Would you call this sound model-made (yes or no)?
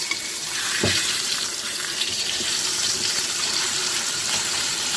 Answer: yes